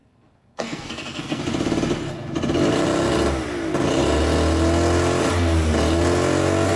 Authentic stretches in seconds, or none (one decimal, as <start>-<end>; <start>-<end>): 1.4-6.8